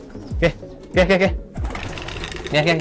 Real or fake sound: real